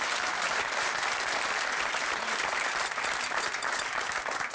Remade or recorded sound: remade